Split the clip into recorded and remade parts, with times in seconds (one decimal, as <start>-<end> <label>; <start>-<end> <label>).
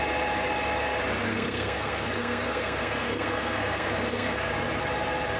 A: 0.0-1.3 recorded; 1.3-4.5 remade; 4.5-5.4 recorded